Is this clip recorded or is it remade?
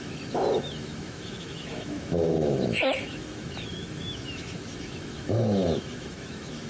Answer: remade